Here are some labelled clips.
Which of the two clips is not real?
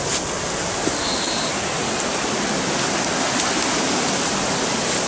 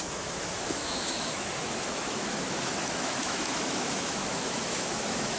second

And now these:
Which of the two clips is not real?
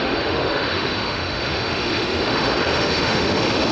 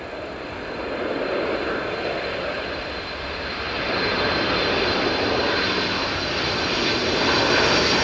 first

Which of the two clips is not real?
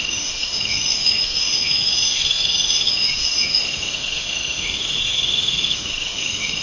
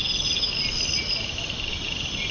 first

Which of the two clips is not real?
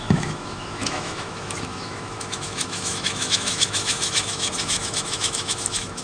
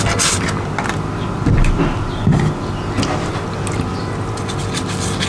first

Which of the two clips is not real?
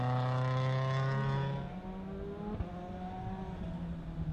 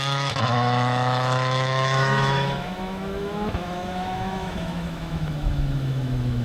second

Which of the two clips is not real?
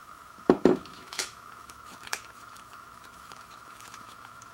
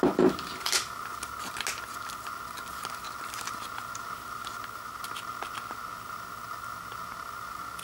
first